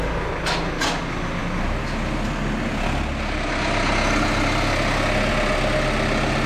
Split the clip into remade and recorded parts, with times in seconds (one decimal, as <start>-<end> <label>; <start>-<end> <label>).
0.0-6.5 recorded